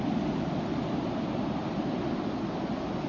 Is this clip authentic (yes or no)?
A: yes